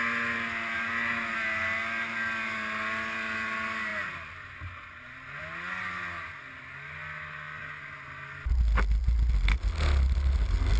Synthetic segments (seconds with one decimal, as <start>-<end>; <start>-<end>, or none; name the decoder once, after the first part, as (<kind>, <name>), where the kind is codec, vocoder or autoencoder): none